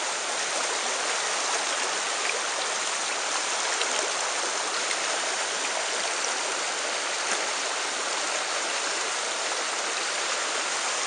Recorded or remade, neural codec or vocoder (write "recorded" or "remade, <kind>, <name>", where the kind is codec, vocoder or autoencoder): recorded